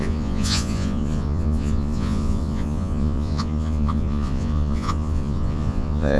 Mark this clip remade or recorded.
remade